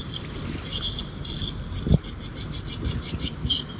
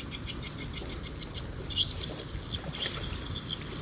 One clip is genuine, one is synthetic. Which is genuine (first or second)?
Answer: second